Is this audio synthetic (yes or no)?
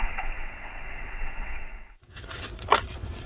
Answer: yes